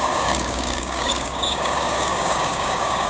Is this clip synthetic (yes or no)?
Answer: yes